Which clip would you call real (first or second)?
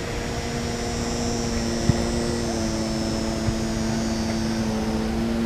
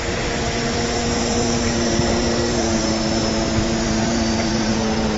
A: first